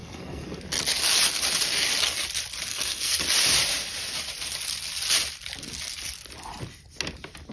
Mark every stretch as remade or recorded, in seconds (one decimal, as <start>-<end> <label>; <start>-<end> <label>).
0.0-0.6 remade; 0.6-2.7 recorded; 2.7-3.2 remade; 3.2-7.5 recorded